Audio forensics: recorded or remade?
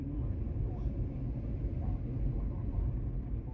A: recorded